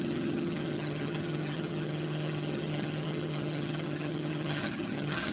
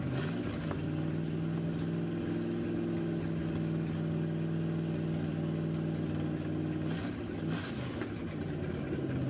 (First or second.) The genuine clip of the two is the second